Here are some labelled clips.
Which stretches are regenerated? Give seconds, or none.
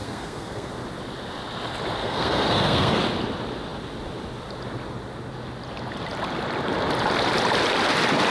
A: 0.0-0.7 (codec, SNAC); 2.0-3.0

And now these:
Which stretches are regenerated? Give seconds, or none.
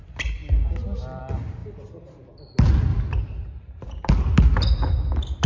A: 1.6-2.1 (vocoder, BigVGAN v2); 2.9-4.1